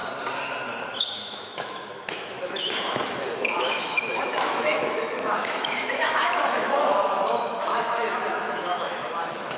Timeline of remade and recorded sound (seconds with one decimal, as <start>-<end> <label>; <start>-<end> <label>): 0.0-1.0 recorded; 1.0-9.6 remade